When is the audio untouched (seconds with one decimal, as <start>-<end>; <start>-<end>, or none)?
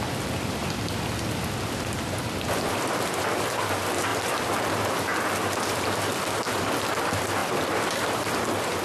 0.0-4.1; 6.4-7.4; 8.3-8.8